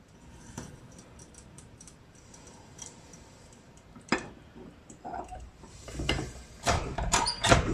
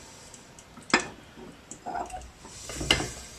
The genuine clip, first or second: second